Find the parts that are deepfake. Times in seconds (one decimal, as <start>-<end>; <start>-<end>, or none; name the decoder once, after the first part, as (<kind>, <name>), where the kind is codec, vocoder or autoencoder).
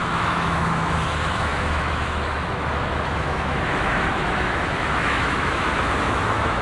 0.0-6.6 (autoencoder, DAC-VAE)